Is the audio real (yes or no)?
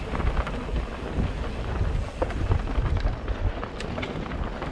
yes